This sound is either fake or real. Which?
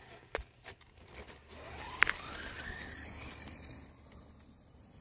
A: real